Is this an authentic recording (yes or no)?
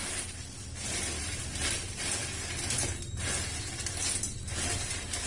yes